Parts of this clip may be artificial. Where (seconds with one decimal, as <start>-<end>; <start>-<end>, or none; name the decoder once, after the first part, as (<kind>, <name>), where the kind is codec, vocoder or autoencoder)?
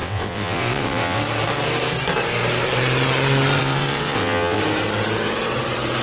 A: 0.0-1.2 (vocoder, WaveNeXt); 3.6-4.6